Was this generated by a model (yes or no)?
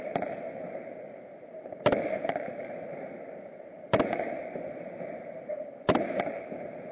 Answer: yes